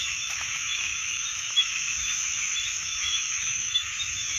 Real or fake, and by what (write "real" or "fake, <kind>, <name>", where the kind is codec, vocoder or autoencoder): fake, autoencoder, DAC-VAE